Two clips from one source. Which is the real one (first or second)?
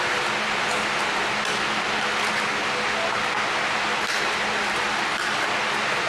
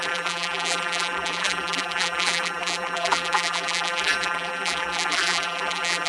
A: first